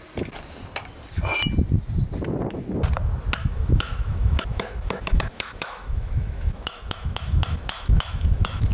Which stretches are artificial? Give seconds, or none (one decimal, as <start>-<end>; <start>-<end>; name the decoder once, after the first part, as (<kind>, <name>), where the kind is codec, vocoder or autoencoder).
3.4-8.7 (autoencoder, DAC-VAE)